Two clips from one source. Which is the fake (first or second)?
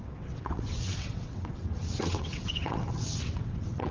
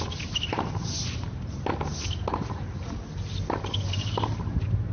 first